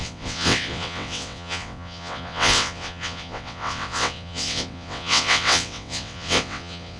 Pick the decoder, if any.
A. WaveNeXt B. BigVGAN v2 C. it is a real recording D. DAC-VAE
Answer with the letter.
A